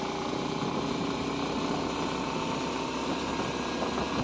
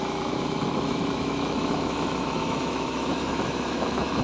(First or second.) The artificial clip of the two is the second